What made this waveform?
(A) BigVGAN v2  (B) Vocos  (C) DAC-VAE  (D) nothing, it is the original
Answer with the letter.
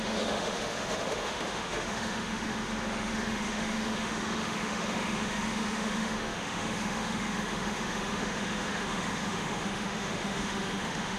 C